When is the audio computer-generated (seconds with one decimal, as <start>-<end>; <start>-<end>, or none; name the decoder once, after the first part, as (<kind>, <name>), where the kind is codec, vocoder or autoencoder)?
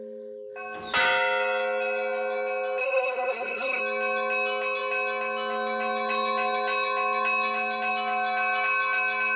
2.8-3.8 (codec, SNAC)